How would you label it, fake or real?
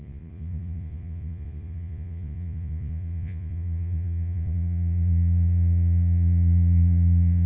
fake